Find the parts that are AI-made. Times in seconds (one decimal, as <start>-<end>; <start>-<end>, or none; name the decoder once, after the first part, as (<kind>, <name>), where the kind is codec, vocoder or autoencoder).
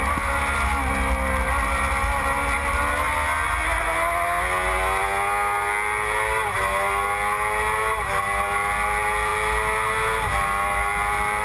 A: none